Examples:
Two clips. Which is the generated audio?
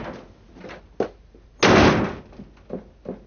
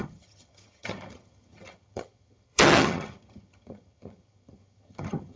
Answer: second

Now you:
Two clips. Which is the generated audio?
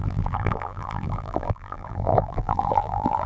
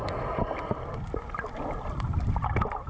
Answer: first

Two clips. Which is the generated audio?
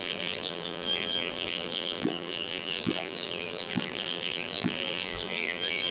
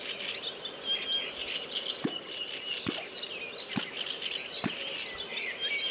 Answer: first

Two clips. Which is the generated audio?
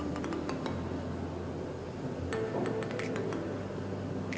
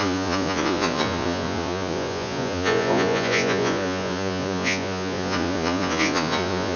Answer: second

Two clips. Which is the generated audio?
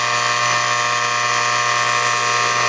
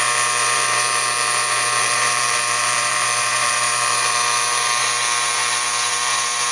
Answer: second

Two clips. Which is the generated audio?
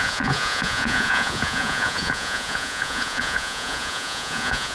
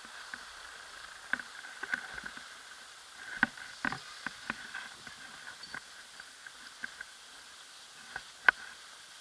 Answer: first